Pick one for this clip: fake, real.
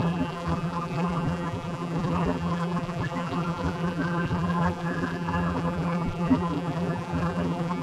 fake